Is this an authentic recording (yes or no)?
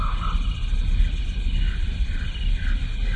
yes